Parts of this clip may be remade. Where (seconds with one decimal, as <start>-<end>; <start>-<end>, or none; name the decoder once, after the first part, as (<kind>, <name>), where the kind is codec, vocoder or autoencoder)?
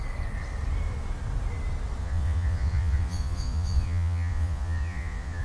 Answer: 2.0-5.4 (vocoder, Vocos)